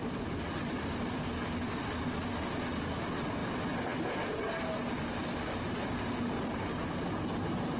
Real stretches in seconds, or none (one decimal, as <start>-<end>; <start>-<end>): 0.0-7.8